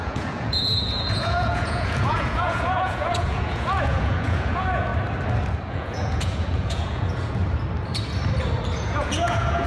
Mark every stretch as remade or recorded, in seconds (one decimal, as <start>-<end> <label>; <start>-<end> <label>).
0.0-4.9 remade; 4.9-5.7 recorded; 5.7-7.4 remade; 7.4-8.8 recorded; 8.8-9.7 remade